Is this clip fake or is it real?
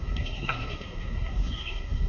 fake